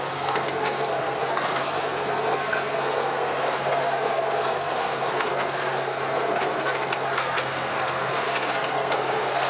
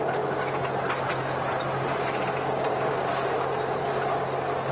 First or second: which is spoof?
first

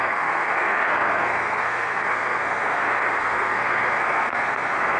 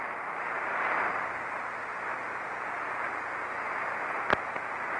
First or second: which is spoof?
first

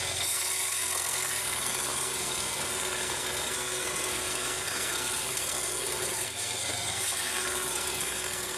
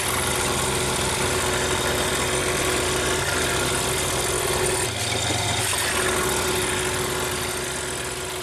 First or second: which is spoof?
first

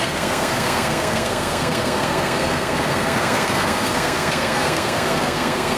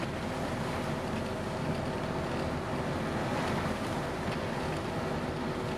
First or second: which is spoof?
first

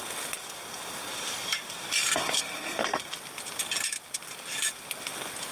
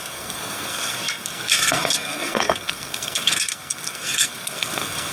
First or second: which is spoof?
second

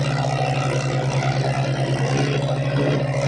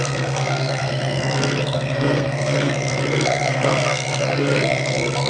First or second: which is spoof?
second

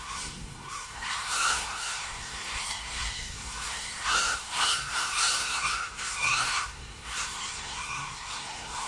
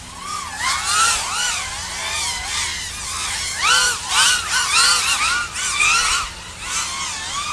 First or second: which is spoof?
first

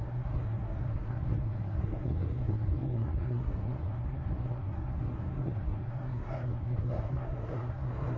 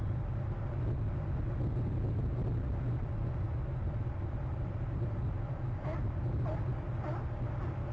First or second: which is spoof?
first